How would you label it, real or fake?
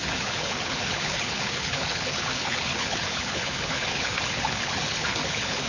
fake